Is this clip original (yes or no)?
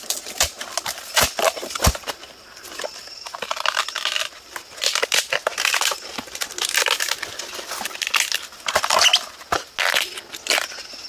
yes